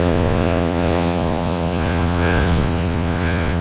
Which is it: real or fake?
fake